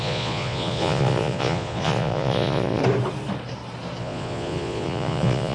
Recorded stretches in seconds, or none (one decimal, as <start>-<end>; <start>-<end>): 2.8-4.0